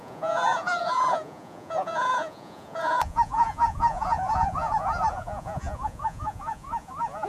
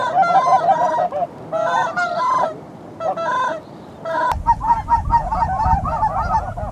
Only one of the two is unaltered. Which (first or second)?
second